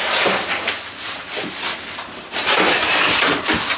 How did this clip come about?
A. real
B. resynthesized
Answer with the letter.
B